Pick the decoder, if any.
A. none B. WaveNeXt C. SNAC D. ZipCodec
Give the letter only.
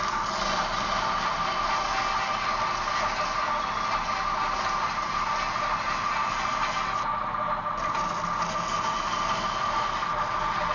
A